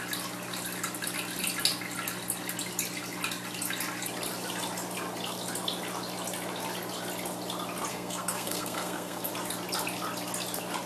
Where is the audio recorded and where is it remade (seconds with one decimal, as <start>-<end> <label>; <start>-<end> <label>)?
0.0-7.9 recorded; 7.9-9.3 remade; 9.3-10.9 recorded